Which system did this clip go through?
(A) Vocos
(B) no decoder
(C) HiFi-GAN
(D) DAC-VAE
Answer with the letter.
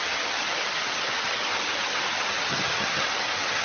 C